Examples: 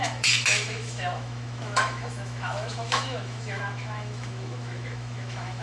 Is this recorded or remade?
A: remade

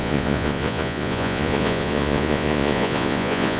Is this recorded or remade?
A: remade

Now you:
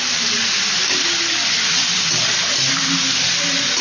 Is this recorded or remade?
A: recorded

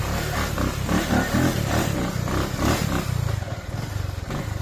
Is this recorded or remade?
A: recorded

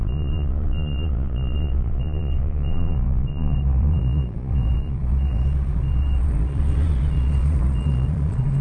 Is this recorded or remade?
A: remade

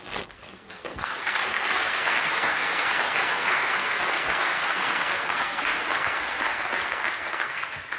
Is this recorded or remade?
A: remade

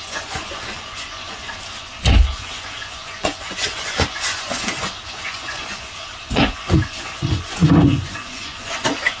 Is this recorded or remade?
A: remade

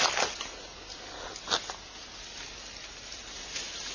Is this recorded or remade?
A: recorded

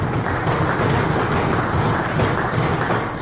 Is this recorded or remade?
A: recorded